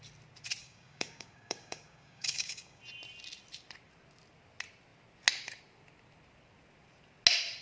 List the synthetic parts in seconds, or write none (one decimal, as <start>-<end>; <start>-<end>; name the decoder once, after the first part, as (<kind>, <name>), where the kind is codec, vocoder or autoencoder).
0.6-2.8 (codec, DAC)